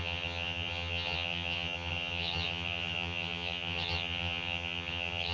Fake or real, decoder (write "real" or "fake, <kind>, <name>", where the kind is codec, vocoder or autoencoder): fake, vocoder, HiFi-GAN